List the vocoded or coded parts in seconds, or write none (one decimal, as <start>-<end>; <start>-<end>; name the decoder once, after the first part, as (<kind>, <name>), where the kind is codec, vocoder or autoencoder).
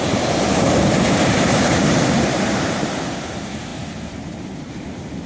0.0-5.3 (vocoder, BigVGAN v2)